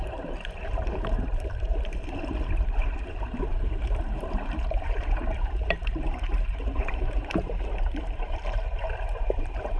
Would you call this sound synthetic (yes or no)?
yes